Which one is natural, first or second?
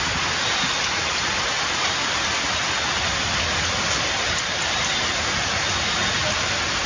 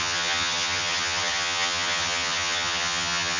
first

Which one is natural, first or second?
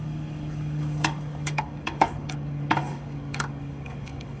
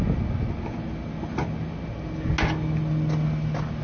second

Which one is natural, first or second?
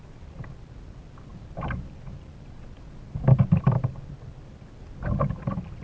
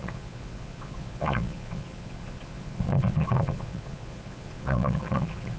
first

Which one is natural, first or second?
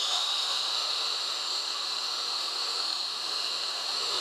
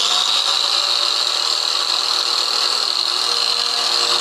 second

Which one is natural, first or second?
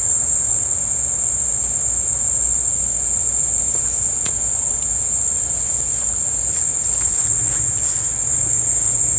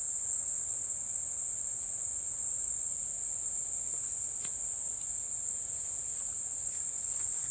first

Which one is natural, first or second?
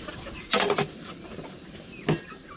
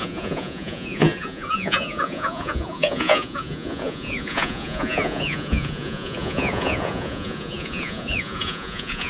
first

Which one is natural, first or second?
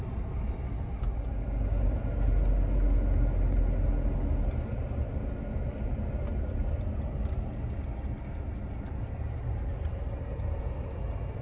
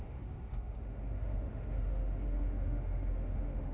first